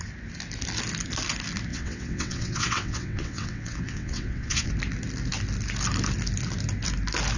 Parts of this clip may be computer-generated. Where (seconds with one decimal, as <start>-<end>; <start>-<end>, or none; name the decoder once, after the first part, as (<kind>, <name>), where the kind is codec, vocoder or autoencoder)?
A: 1.7-4.7 (vocoder, WaveNeXt)